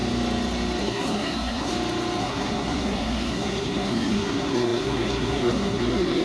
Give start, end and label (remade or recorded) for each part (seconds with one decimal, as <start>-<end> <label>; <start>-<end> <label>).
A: 0.0-0.8 recorded; 0.8-1.7 remade; 1.7-2.2 recorded; 2.2-6.2 remade